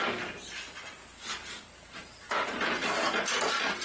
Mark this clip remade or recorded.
recorded